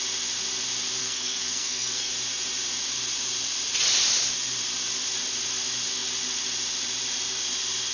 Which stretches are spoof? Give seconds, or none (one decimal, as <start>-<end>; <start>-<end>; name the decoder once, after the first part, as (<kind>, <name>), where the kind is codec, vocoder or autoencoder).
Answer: 1.0-2.1 (codec, SNAC)